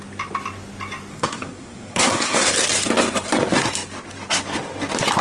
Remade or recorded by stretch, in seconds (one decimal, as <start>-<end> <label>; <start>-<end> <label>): 0.0-1.1 recorded; 1.1-2.5 remade; 2.5-5.2 recorded